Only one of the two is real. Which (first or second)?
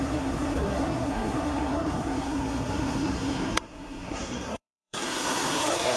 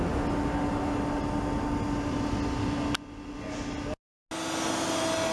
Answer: second